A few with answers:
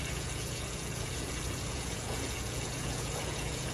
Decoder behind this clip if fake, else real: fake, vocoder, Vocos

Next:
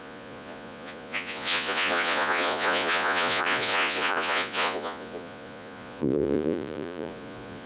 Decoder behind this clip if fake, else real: fake, vocoder, Vocos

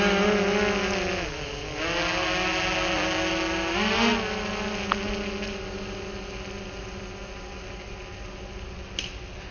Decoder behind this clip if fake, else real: real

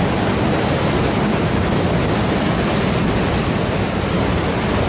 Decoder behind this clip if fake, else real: real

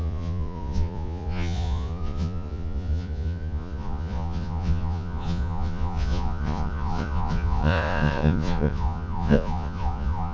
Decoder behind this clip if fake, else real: fake, vocoder, Vocos